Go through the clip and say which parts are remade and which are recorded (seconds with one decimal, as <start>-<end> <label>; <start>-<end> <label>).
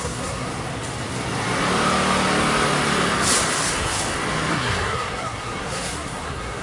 0.0-0.5 remade; 0.5-4.5 recorded; 4.5-6.6 remade